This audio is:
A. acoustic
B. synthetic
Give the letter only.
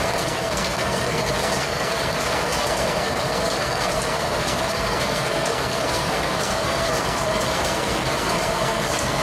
B